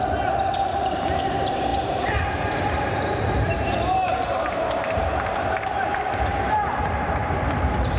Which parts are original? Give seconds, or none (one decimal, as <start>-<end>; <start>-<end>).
none